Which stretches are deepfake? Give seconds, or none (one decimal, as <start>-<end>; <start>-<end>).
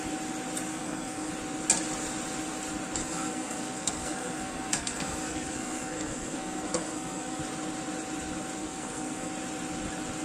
0.7-1.3; 3.0-7.4; 8.6-9.3